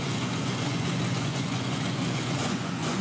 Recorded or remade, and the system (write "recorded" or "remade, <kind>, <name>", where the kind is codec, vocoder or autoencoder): remade, vocoder, Vocos